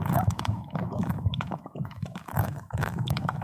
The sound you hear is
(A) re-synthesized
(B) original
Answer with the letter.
A